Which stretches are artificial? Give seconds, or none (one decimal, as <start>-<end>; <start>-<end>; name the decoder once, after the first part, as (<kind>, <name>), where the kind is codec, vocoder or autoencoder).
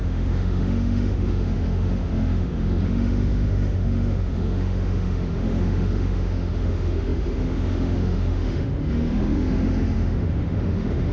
0.0-11.1 (autoencoder, DAC-VAE)